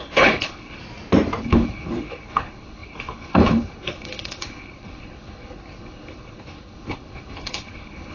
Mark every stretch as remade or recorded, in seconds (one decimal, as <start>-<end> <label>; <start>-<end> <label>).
0.0-0.8 remade; 0.8-1.4 recorded; 1.4-8.1 remade